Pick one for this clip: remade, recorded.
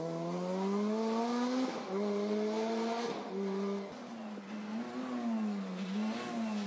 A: recorded